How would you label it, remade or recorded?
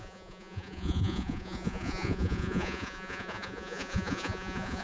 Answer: remade